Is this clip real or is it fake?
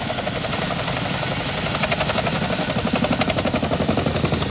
real